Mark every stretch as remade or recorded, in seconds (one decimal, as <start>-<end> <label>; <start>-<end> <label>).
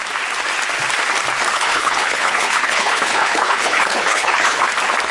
0.0-1.5 recorded; 1.5-4.6 remade; 4.6-5.1 recorded